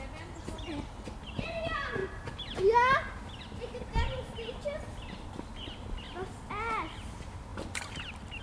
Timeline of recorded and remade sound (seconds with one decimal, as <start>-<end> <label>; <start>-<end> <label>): 0.0-7.5 recorded; 7.5-8.4 remade